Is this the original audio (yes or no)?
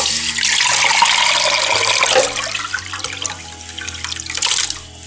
yes